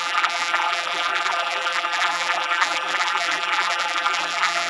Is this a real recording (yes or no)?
no